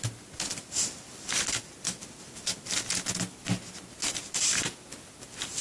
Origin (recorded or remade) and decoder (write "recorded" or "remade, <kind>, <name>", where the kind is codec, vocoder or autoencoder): recorded